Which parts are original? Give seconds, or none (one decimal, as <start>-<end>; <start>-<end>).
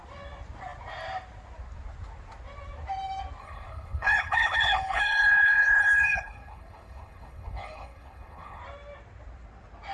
0.0-3.4; 8.6-9.9